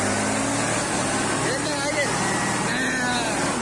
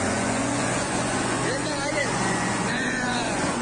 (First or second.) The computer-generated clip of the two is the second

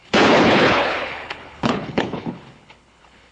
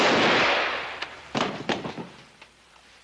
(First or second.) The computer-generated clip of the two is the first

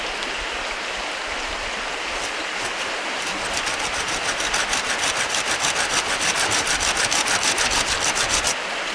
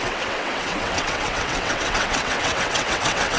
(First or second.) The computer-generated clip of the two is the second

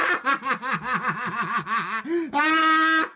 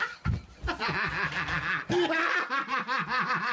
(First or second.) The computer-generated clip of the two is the second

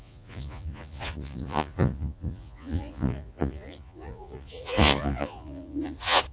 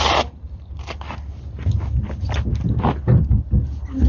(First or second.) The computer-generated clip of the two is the first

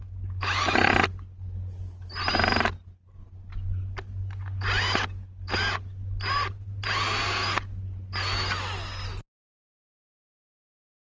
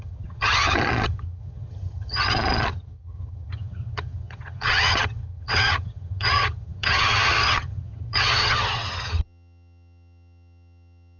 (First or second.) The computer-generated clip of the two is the second